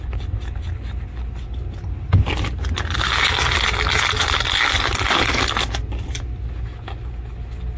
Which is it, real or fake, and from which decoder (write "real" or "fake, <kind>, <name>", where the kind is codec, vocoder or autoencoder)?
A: real